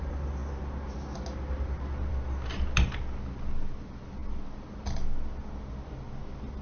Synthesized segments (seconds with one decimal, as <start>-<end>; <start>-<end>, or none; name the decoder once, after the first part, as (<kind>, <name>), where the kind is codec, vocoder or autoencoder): none